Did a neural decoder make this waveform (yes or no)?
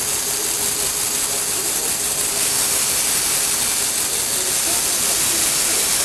no